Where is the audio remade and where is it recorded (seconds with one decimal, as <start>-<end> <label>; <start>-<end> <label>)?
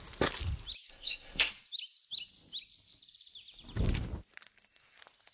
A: 0.0-0.9 recorded; 0.9-1.5 remade; 1.5-5.3 recorded